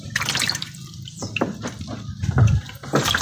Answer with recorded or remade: recorded